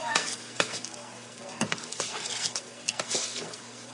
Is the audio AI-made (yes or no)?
yes